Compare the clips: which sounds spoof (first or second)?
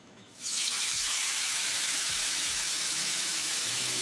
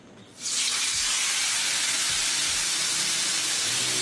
first